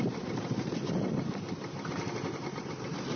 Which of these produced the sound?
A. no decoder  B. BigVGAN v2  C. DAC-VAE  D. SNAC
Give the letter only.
B